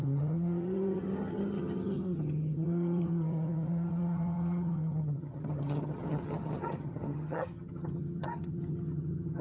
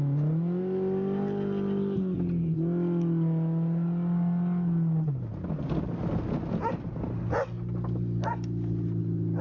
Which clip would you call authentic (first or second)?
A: second